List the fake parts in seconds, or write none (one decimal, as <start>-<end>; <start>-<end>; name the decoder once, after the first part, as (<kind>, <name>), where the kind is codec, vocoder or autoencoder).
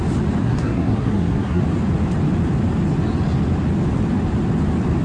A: 0.4-1.6 (codec, SNAC)